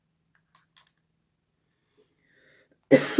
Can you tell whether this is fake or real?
real